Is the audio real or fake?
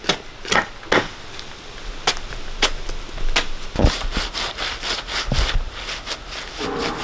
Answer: real